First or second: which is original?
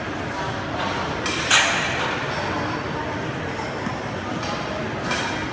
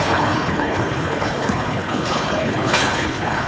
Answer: first